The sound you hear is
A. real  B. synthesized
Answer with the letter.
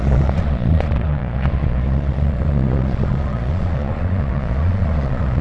B